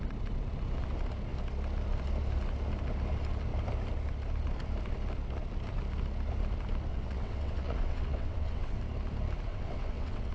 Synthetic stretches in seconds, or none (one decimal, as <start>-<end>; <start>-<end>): 6.9-8.8; 9.5-10.3